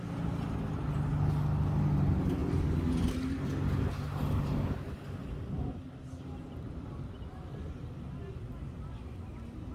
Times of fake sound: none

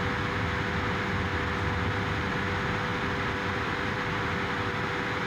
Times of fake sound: 2.9-5.3

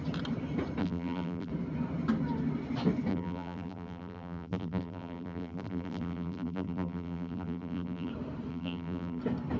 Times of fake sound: 0.8-1.5; 3.1-8.1; 8.5-9.2